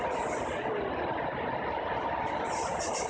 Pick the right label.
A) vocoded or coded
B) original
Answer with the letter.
B